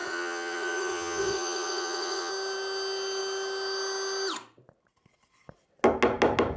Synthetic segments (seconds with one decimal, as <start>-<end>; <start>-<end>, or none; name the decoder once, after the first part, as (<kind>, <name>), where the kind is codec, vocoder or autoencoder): 0.0-2.3 (vocoder, Vocos)